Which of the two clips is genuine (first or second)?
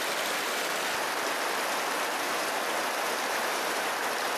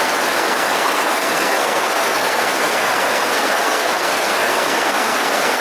first